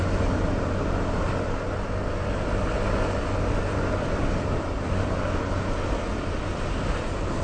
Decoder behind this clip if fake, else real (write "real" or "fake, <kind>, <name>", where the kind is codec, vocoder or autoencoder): real